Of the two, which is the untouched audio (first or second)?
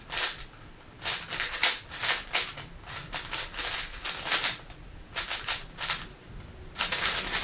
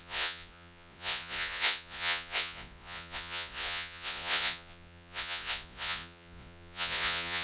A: first